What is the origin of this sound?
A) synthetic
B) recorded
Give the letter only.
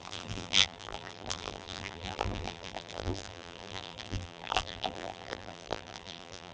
A